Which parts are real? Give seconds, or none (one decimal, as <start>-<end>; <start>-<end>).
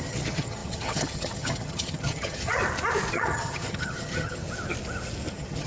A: 2.6-3.1; 4.4-5.3